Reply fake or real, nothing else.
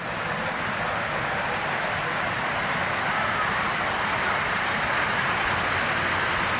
real